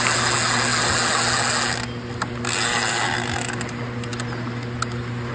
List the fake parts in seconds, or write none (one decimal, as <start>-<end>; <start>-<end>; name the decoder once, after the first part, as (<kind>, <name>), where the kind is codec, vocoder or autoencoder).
none